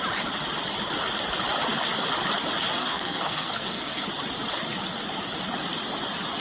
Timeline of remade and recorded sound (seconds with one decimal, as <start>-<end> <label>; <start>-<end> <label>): 0.0-2.8 recorded; 2.8-4.1 remade; 4.1-6.4 recorded